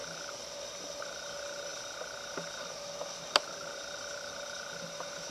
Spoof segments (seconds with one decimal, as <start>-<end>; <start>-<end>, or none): none